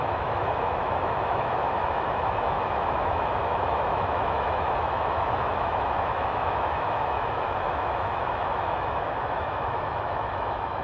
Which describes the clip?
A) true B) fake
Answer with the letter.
B